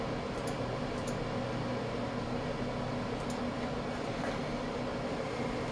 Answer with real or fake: real